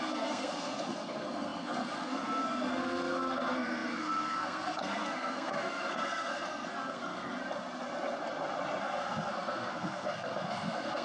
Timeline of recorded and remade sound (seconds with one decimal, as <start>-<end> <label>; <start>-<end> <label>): 0.0-7.4 remade; 7.4-8.8 recorded; 8.8-11.0 remade